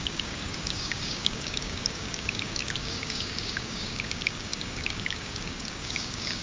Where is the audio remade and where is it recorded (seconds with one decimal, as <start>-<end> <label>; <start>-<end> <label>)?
0.0-6.4 remade